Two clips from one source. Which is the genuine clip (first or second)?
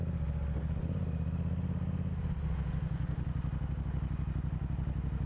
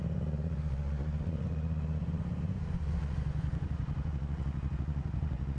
first